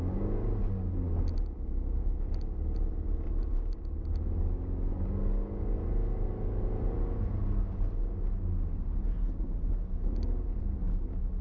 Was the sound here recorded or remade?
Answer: recorded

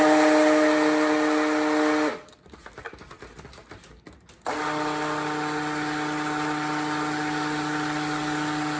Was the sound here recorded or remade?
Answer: recorded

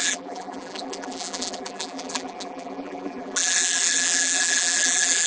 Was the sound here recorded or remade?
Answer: remade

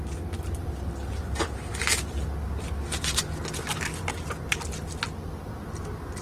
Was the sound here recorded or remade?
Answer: recorded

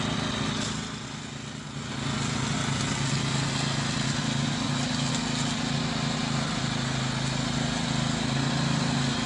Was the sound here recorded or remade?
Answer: recorded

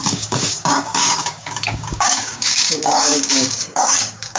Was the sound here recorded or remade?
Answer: remade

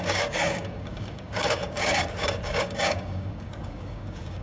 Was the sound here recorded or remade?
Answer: remade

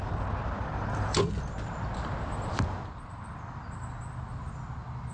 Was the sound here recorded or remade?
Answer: recorded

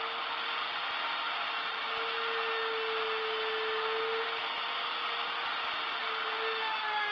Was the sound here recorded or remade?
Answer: recorded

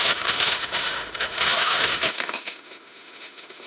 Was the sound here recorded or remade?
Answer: remade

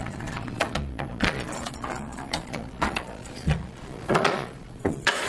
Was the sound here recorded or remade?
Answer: remade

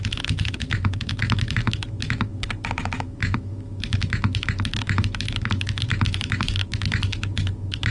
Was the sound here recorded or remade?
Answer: remade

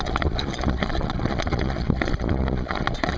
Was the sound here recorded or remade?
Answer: remade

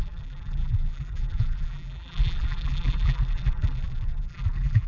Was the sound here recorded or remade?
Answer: remade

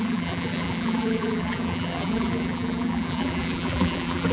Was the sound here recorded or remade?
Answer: remade